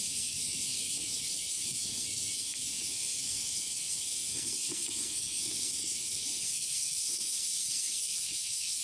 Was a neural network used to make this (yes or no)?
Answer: yes